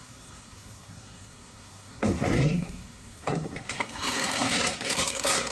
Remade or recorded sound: remade